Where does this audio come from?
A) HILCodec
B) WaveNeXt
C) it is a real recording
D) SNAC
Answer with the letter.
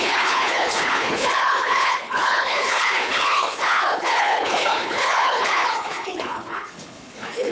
A